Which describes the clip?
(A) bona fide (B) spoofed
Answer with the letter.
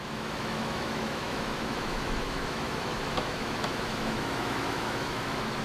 B